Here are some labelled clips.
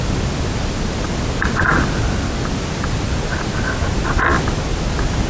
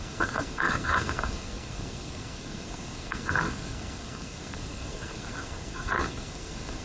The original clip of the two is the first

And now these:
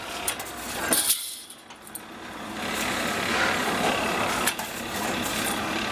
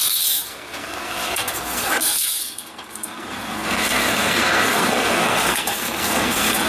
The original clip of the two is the first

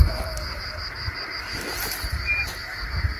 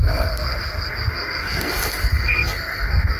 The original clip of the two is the first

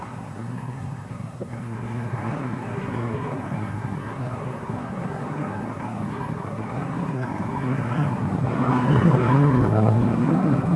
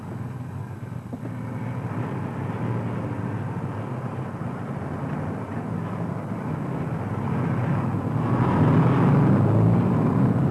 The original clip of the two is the second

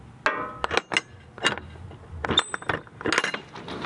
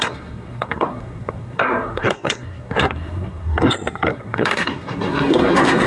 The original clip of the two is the first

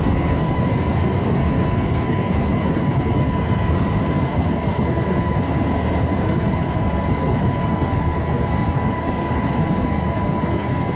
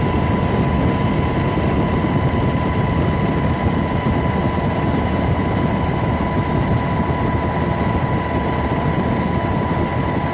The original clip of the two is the second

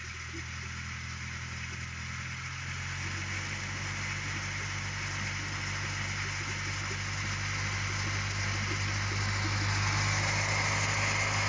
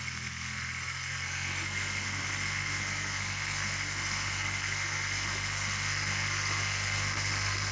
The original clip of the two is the first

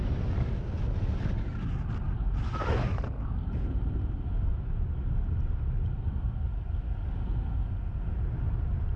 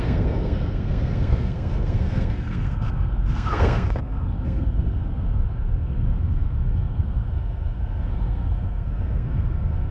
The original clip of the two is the first